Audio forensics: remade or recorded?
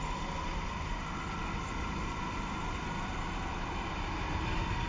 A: recorded